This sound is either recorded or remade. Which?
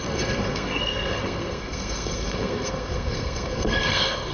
remade